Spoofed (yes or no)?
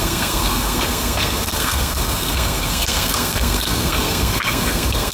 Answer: yes